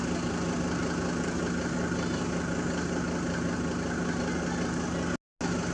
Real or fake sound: real